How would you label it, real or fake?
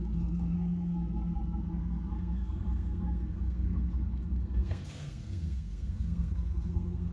fake